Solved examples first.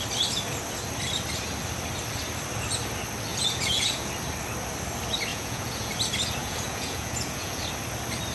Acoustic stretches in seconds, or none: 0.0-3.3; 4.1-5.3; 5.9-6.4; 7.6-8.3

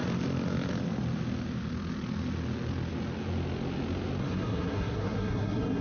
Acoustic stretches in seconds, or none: 0.0-4.2

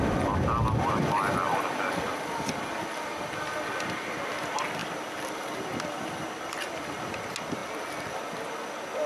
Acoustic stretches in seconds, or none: 0.0-9.1

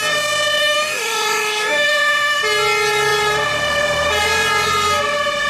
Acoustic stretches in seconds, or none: 0.0-0.6; 2.4-5.5

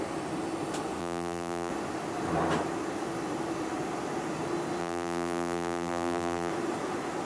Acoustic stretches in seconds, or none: 0.0-1.0; 1.7-4.8; 6.5-7.2